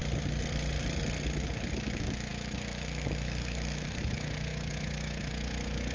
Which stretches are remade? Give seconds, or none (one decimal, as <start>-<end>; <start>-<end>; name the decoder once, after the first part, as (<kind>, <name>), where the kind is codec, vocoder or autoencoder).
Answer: 1.7-5.9 (autoencoder, DAC-VAE)